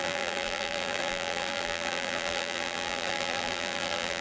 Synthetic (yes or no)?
yes